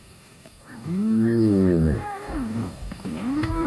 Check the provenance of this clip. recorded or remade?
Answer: remade